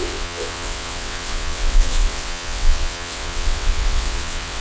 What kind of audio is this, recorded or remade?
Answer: remade